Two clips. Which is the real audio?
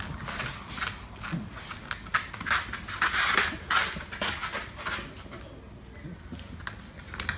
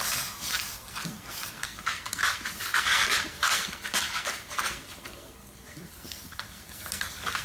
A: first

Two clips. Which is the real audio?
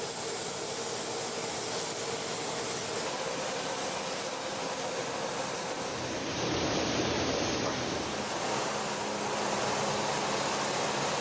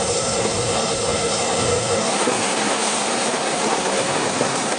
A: first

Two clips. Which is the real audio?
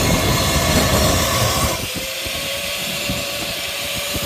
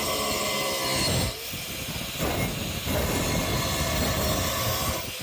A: second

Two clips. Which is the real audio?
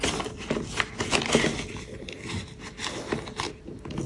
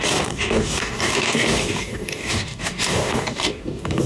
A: first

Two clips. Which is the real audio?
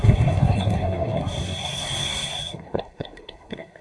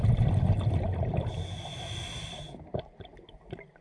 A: second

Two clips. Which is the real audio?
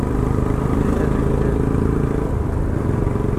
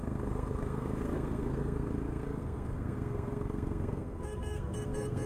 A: first